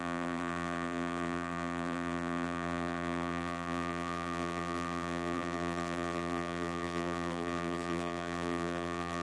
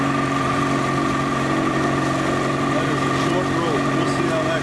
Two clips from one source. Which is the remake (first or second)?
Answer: first